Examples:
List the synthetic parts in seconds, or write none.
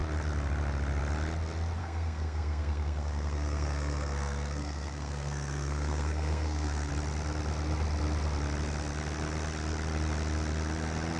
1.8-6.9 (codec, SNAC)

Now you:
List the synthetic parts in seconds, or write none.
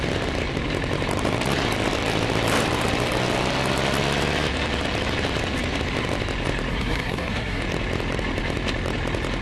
6.7-7.6 (codec, SNAC)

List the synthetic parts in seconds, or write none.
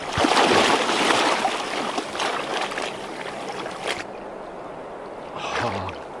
none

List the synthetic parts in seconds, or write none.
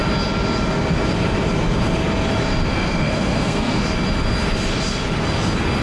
2.7-3.8 (codec, SNAC)